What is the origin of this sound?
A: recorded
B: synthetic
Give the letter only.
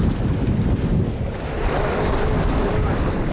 A